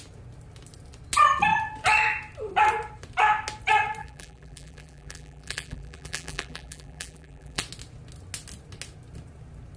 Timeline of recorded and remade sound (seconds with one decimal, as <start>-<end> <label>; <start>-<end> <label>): 0.0-4.0 recorded; 4.0-7.6 remade; 7.6-9.8 recorded